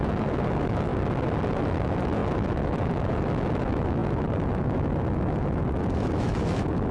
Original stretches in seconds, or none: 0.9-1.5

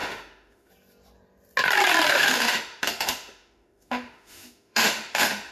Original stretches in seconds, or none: 0.7-2.1

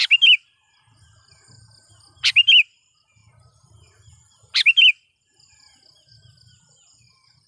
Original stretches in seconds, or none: 0.0-7.5

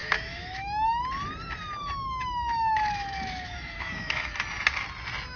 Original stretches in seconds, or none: 1.0-1.8; 4.4-5.4

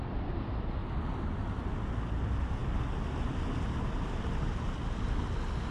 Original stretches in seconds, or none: 0.0-5.7

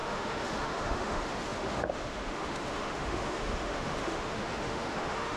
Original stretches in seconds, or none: none